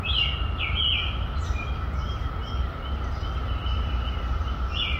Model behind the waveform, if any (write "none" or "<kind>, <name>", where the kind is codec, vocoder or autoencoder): none